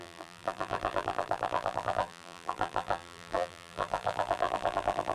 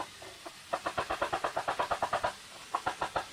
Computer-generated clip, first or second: first